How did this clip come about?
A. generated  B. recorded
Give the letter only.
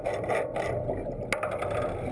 B